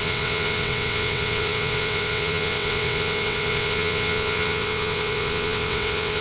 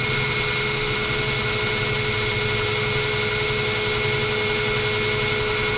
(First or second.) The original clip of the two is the second